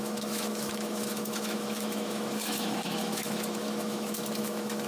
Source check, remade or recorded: remade